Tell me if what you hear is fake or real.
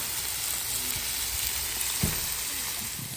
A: real